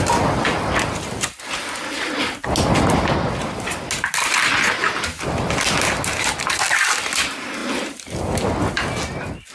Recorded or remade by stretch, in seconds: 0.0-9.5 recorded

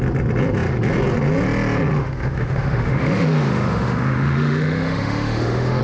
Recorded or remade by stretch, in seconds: 0.0-2.0 recorded; 2.0-5.8 remade

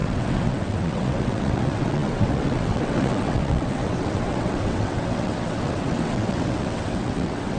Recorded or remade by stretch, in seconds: 0.0-7.6 remade

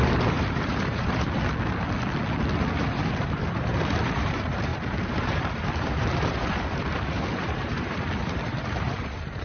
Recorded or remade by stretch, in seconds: 0.0-1.4 remade; 1.4-2.8 recorded; 2.8-9.4 remade

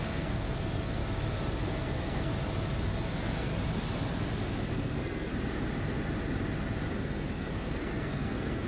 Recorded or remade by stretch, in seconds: 0.0-1.0 remade; 1.0-1.6 recorded; 1.6-2.3 remade; 2.3-3.1 recorded; 3.1-3.5 remade; 3.5-4.7 recorded; 4.7-5.3 remade; 5.3-6.9 recorded; 6.9-8.7 remade

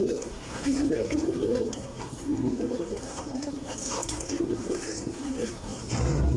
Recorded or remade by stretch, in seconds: 0.0-6.4 remade